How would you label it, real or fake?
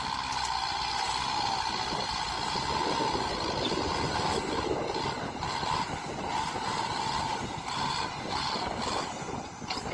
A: real